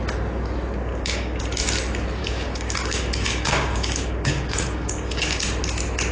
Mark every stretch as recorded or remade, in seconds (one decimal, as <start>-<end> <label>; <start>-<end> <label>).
0.0-0.9 recorded; 0.9-1.4 remade; 1.4-2.2 recorded; 2.2-5.4 remade; 5.4-6.1 recorded

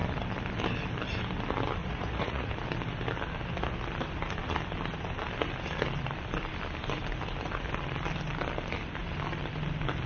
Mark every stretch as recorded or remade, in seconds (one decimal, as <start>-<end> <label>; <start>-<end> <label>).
0.0-1.8 recorded; 1.8-2.5 remade; 2.5-10.1 recorded

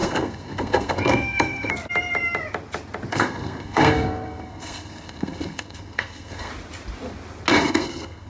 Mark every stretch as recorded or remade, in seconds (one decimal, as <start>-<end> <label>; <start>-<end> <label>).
0.0-1.7 remade; 1.7-3.1 recorded; 3.1-6.5 remade; 6.5-7.5 recorded; 7.5-8.3 remade